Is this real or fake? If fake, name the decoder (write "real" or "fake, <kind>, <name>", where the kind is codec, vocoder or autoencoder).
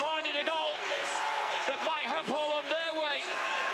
fake, codec, SNAC